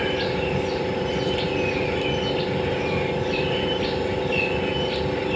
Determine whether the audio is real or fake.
real